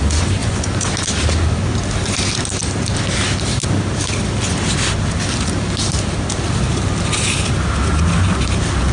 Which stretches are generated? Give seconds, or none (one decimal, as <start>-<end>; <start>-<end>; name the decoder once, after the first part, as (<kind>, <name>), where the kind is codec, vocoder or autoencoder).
0.4-0.9 (vocoder, Vocos)

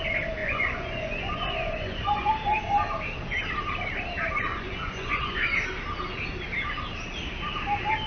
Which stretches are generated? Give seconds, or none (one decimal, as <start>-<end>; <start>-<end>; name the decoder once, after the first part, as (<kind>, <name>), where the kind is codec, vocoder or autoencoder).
0.4-2.3 (vocoder, Vocos); 4.5-5.4